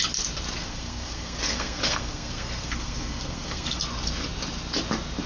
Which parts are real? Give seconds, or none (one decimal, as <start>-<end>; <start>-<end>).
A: 0.0-0.6; 3.8-5.3